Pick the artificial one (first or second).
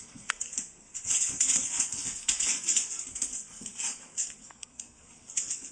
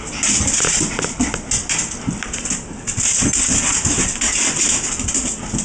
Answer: first